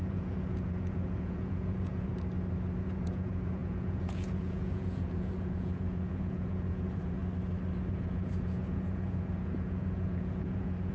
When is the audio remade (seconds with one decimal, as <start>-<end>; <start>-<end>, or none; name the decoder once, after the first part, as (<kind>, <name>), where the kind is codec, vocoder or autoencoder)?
0.0-2.1 (vocoder, Vocos); 2.8-7.2; 7.9-10.9